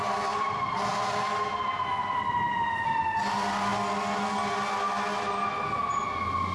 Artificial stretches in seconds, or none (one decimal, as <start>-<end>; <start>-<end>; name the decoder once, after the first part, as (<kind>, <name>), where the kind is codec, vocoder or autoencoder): none